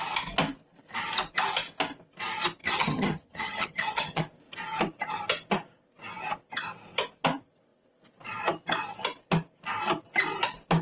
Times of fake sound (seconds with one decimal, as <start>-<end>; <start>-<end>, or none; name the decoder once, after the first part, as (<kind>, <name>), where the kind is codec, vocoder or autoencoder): 2.6-4.2 (vocoder, HiFi-GAN)